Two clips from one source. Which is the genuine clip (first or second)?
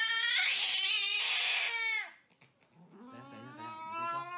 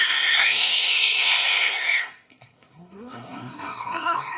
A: first